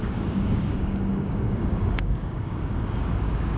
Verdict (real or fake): fake